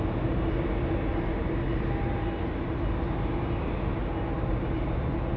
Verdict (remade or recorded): recorded